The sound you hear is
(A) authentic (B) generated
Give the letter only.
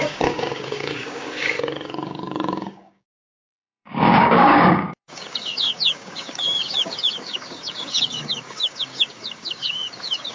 B